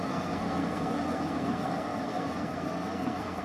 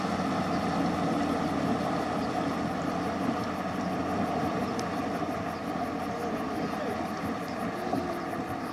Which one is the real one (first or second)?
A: second